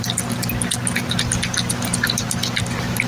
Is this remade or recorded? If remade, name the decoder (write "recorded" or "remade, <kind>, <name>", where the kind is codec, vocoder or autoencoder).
recorded